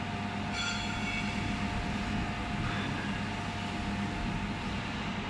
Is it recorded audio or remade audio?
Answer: recorded